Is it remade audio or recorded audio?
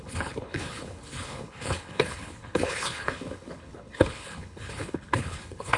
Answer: remade